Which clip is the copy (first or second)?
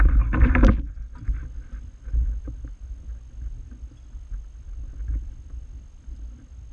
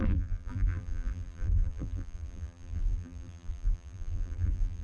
second